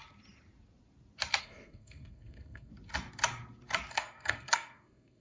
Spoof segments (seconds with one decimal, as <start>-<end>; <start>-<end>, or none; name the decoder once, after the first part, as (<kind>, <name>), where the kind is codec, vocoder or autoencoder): 1.4-2.7 (codec, SNAC); 3.9-5.2